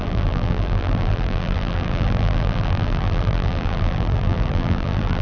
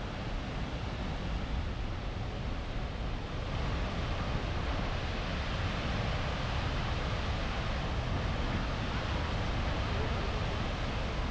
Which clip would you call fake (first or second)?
first